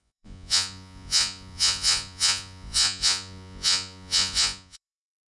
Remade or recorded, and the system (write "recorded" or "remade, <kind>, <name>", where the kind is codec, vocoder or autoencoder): remade, vocoder, Vocos